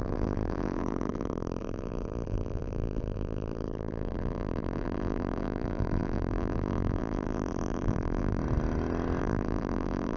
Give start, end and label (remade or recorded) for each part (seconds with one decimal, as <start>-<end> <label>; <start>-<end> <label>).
0.0-8.4 remade; 8.4-9.2 recorded; 9.2-10.2 remade